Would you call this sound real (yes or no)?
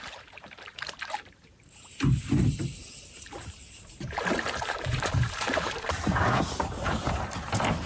no